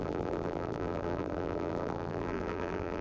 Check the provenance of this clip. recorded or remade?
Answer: remade